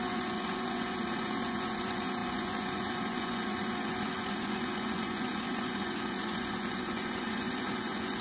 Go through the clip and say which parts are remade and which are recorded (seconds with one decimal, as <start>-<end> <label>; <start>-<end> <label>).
0.0-8.2 remade